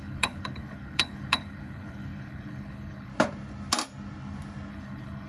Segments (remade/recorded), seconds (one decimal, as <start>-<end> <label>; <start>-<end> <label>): 0.0-3.1 remade; 3.1-4.7 recorded; 4.7-5.3 remade